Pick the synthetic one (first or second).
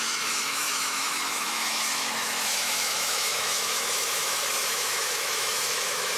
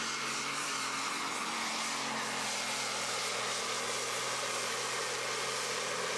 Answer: first